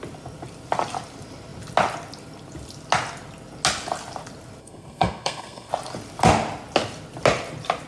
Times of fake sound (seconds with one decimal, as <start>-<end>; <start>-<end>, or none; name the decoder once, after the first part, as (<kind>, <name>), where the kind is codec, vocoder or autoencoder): 4.6-5.7 (codec, SNAC)